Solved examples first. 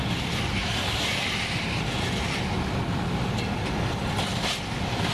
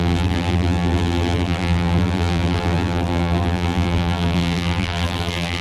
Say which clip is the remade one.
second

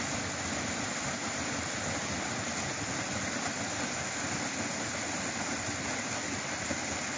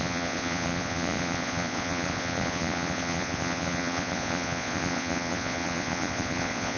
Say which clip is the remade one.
second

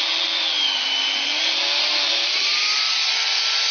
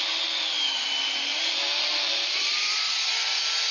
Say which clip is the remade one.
second